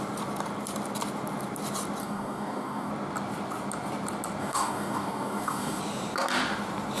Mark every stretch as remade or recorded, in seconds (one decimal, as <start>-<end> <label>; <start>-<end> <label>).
0.0-2.0 recorded; 2.0-2.9 remade; 2.9-4.4 recorded; 4.4-5.8 remade; 5.8-7.0 recorded